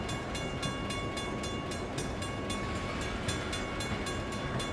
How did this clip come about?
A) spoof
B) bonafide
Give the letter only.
B